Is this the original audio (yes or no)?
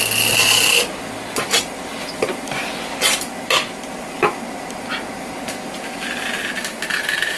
yes